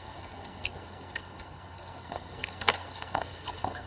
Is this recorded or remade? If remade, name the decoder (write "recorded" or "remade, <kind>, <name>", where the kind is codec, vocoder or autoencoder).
remade, codec, SNAC